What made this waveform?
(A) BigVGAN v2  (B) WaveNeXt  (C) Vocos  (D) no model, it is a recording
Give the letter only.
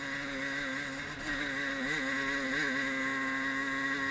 D